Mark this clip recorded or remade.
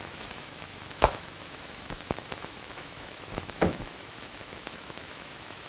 remade